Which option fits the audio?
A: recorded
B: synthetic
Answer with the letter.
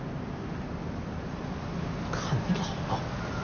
A